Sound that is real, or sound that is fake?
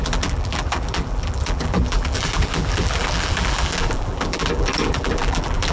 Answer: fake